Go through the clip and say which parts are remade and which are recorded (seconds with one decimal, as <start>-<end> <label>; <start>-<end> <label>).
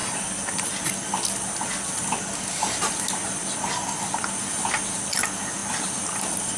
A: 0.0-6.6 recorded